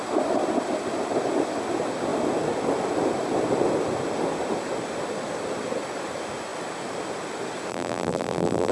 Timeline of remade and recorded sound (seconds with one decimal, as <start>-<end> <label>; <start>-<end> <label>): 0.0-7.7 recorded; 7.7-8.7 remade